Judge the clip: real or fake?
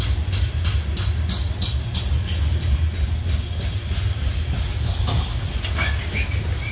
real